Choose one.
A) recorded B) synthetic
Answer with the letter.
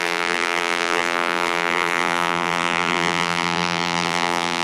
B